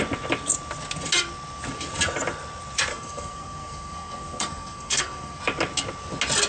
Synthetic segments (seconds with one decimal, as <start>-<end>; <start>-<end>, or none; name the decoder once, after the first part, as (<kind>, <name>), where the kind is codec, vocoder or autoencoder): 2.9-5.4 (codec, SNAC)